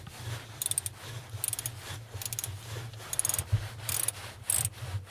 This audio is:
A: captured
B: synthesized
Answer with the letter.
A